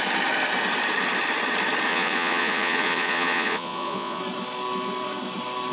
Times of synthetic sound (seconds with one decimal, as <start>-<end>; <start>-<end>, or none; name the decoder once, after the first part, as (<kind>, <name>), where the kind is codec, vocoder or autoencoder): 1.9-4.2 (vocoder, Vocos)

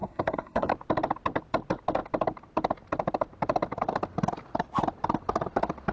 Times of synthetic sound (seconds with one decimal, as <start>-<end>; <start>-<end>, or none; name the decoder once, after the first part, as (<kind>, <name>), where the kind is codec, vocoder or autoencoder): 0.0-0.7 (codec, SNAC)

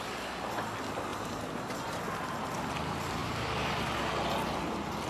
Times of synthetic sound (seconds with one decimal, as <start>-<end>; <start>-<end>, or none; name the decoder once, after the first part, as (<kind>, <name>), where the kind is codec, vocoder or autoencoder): 1.1-2.0 (vocoder, BigVGAN v2)

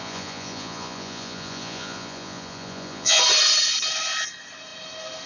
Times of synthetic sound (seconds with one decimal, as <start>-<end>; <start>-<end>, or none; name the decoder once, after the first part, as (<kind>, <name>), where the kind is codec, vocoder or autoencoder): 0.0-3.2 (vocoder, Vocos)

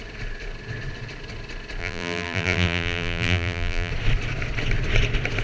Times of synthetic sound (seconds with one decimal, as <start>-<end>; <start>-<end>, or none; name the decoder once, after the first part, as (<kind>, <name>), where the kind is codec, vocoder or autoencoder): 1.8-3.9 (vocoder, BigVGAN v2)

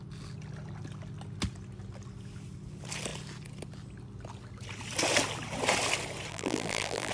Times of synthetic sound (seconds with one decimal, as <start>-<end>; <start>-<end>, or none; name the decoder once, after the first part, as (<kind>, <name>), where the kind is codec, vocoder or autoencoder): 6.3-7.1 (vocoder, BigVGAN v2)

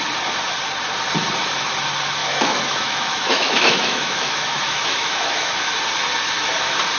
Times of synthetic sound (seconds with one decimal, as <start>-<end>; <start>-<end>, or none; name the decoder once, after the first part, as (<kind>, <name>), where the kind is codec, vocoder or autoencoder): 2.2-5.8 (autoencoder, DAC-VAE)

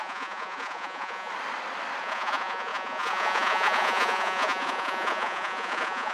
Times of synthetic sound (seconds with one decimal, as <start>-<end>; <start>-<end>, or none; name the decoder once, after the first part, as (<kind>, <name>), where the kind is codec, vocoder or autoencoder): 0.0-1.3 (vocoder, Vocos); 2.0-6.1